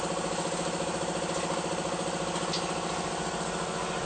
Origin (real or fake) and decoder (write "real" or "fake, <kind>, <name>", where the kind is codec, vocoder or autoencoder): real